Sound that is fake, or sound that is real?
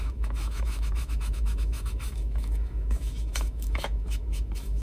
fake